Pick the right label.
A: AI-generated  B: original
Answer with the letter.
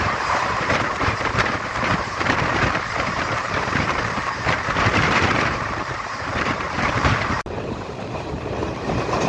A